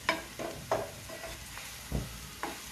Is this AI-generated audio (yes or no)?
no